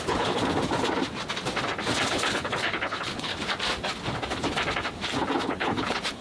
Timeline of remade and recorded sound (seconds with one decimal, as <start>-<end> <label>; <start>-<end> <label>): 0.0-0.4 remade; 0.4-2.1 recorded; 2.1-3.3 remade; 3.3-5.4 recorded; 5.4-6.2 remade